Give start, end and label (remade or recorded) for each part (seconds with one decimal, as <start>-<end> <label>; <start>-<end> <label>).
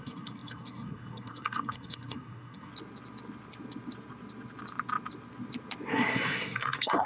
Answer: 0.0-2.7 remade; 2.7-5.9 recorded; 5.9-7.1 remade